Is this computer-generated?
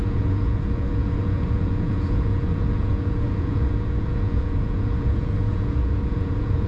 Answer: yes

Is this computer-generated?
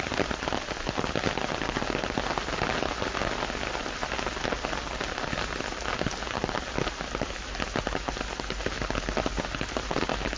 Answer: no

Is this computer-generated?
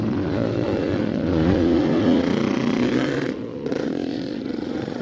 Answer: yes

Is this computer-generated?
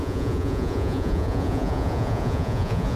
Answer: yes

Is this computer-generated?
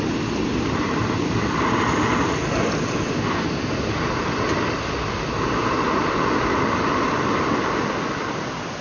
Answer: no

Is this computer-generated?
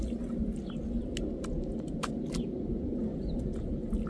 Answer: no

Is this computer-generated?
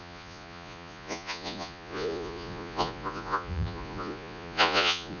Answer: yes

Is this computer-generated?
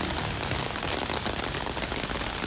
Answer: no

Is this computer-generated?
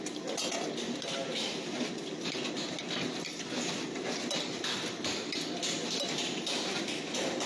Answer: no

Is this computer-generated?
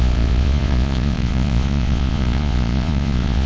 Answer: yes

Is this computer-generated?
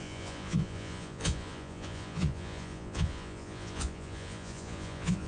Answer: yes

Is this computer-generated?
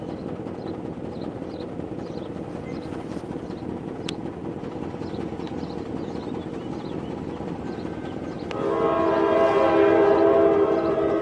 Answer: no